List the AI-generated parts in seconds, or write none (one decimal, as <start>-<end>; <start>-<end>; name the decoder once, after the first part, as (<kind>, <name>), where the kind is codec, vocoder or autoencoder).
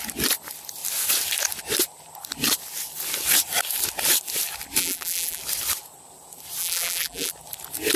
4.8-5.4 (vocoder, BigVGAN v2); 6.6-7.3